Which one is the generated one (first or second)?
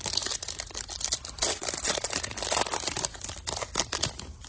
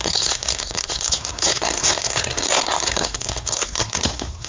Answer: second